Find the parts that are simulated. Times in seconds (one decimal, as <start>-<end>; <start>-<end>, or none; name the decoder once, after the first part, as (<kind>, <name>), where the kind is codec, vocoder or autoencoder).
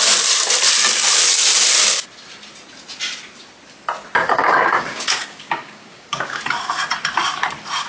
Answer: 4.2-6.4 (codec, DAC)